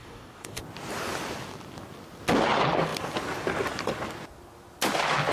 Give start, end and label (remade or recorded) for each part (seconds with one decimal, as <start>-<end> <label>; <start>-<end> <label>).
0.0-0.6 remade; 0.6-5.3 recorded